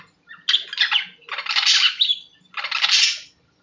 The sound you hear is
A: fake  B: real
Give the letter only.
B